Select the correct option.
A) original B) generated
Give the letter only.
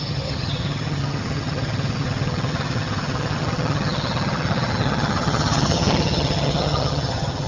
B